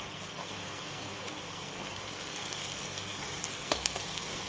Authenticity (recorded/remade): remade